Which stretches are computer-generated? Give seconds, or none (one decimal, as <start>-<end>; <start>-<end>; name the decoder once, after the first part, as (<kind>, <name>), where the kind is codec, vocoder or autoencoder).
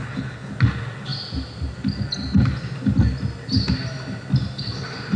0.0-0.5 (codec, HILCodec)